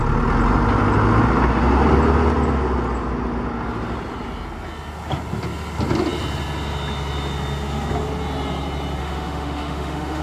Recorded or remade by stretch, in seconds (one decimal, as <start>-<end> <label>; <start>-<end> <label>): 0.0-9.0 recorded; 9.0-10.2 remade